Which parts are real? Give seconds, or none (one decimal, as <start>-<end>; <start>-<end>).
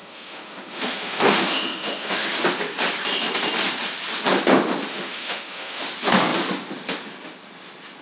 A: 2.3-4.9; 5.8-8.0